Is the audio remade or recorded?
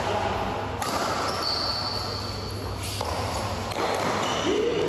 recorded